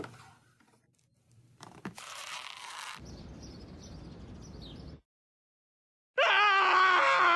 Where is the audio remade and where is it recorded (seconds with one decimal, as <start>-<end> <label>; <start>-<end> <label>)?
0.0-1.1 recorded; 1.1-3.9 remade; 3.9-7.4 recorded